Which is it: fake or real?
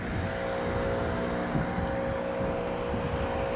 real